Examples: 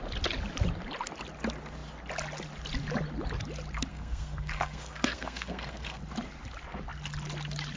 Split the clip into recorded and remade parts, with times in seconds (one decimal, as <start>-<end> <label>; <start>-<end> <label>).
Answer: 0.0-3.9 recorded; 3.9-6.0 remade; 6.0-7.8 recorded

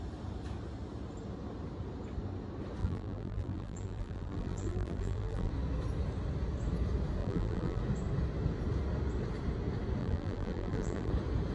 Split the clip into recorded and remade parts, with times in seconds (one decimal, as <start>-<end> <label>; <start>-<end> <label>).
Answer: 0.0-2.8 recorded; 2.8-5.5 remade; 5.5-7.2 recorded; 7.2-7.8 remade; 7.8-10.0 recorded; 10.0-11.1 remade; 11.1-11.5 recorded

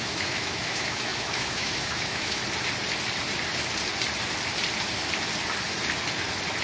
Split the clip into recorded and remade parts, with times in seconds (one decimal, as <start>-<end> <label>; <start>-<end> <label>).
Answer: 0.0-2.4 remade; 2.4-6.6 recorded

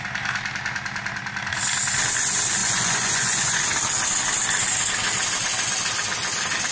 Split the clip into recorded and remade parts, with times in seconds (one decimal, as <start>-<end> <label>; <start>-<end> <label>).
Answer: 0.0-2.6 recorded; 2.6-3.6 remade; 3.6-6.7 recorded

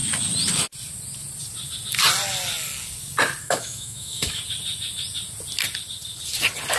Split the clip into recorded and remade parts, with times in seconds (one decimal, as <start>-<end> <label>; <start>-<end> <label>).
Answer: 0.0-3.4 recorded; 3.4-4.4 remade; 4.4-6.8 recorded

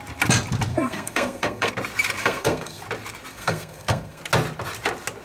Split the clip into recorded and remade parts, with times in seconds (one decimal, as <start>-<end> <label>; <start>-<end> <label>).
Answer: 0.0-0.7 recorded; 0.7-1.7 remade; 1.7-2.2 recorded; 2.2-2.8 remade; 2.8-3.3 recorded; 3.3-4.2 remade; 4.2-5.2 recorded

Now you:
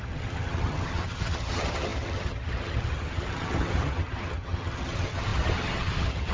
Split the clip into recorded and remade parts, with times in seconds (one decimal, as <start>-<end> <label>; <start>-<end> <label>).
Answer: 0.0-6.3 remade

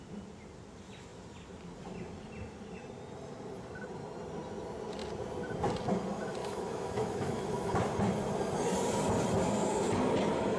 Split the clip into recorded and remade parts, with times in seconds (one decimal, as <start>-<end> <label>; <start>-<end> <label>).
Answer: 0.0-6.4 recorded; 6.4-7.7 remade; 7.7-10.6 recorded